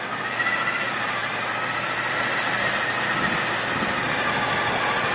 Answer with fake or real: real